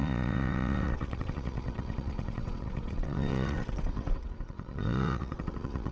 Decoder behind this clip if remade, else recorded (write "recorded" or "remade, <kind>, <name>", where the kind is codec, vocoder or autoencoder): remade, vocoder, WaveNeXt